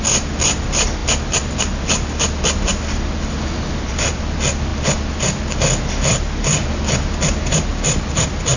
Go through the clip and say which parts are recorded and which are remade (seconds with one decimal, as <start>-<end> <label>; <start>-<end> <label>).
0.0-8.6 recorded